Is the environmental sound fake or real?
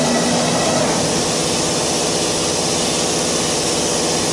real